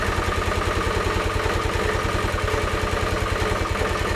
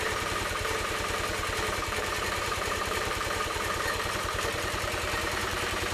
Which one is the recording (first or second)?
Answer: first